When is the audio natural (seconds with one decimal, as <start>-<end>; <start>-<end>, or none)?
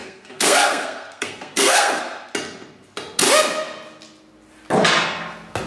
2.0-5.7